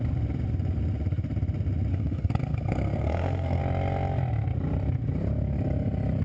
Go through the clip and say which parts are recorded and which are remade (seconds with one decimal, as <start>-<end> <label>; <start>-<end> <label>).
0.0-1.9 recorded; 1.9-3.6 remade; 3.6-6.2 recorded